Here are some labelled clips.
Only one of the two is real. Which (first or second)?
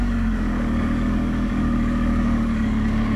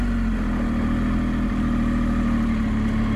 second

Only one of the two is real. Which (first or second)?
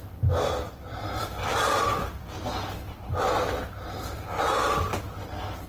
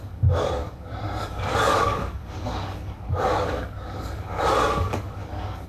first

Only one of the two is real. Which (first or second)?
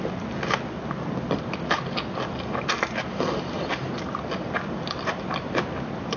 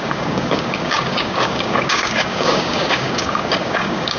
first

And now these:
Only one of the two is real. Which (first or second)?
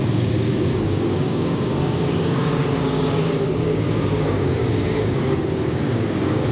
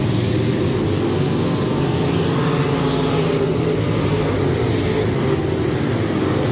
second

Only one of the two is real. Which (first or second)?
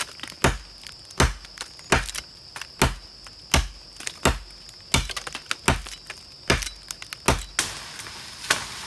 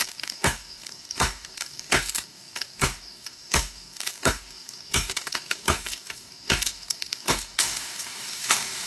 first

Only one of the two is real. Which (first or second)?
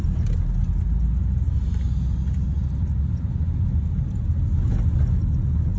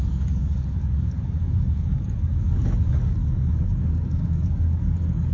first